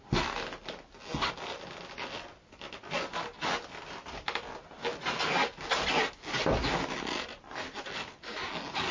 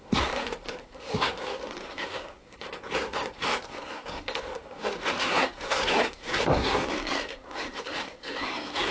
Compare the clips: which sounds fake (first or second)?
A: second